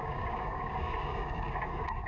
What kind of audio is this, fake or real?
fake